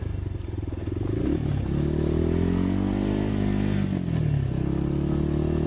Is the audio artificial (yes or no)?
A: no